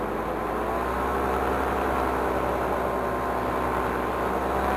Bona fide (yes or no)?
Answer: yes